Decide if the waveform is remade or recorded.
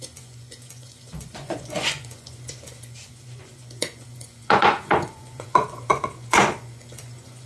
remade